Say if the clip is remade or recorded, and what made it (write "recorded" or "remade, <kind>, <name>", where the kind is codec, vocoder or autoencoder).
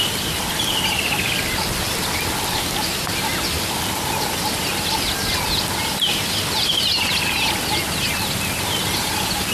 recorded